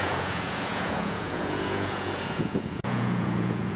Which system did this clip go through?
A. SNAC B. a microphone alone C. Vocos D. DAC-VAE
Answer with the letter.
C